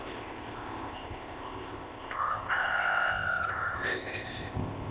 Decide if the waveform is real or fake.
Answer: fake